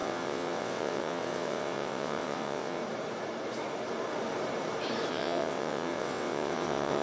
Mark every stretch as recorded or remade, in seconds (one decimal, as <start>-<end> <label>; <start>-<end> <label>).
0.0-2.8 remade; 2.8-5.1 recorded; 5.1-7.0 remade

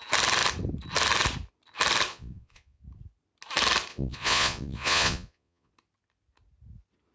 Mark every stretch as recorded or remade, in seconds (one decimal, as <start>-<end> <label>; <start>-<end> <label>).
0.0-2.1 recorded; 2.1-2.8 remade; 2.8-3.9 recorded; 3.9-5.7 remade; 5.7-7.1 recorded

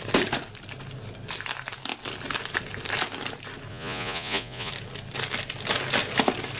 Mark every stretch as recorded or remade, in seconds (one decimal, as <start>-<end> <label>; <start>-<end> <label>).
0.0-3.7 recorded; 3.7-4.7 remade; 4.7-6.6 recorded

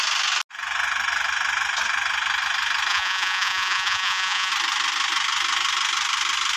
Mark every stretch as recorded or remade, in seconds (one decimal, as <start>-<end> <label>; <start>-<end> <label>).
0.0-2.9 recorded; 2.9-4.5 remade; 4.5-6.6 recorded

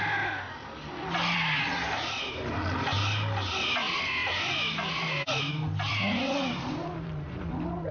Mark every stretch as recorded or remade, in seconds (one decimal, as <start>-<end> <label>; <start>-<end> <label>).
0.0-7.9 recorded

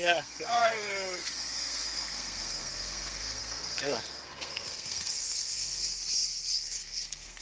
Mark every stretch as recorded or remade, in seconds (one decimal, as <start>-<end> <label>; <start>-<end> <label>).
0.0-5.8 remade; 5.8-6.5 recorded; 6.5-7.4 remade

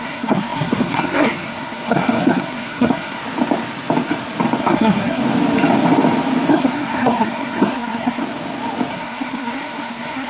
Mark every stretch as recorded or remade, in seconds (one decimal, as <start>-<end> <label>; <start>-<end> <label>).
0.0-3.2 remade; 3.2-4.6 recorded; 4.6-5.2 remade; 5.2-6.5 recorded; 6.5-8.2 remade; 8.2-8.9 recorded; 8.9-10.3 remade

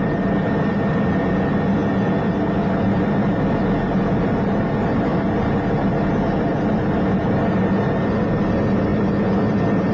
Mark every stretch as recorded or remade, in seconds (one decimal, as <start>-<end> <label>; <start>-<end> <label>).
0.0-9.9 recorded